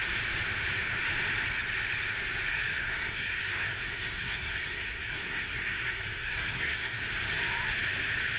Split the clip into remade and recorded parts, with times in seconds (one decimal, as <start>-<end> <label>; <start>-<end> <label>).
0.0-2.5 recorded; 2.5-7.0 remade; 7.0-8.4 recorded